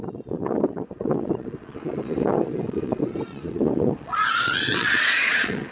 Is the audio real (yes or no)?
no